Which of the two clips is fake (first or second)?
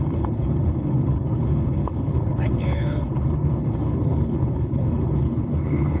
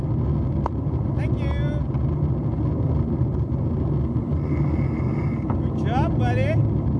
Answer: first